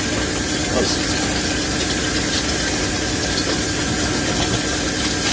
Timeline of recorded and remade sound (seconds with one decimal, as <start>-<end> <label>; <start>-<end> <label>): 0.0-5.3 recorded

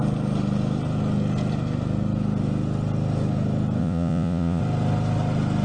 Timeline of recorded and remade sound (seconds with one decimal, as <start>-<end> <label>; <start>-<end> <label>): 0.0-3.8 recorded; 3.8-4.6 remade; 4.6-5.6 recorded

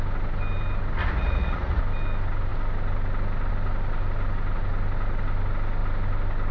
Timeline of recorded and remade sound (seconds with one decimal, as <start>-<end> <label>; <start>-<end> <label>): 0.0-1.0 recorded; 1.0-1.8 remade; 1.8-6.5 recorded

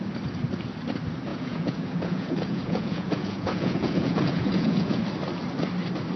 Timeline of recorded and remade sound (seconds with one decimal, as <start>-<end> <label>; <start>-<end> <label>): 0.0-1.3 recorded; 1.3-5.0 remade; 5.0-6.2 recorded

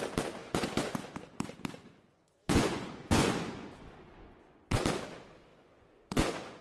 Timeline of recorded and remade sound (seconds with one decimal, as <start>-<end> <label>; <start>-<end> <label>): 0.0-0.4 recorded; 0.4-1.2 remade; 1.2-1.8 recorded; 1.8-4.8 remade; 4.8-5.5 recorded; 5.5-6.6 remade